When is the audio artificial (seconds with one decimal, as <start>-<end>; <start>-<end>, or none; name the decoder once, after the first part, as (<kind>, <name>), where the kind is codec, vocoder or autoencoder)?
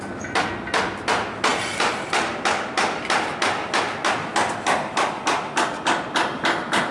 1.5-2.4 (vocoder, BigVGAN v2)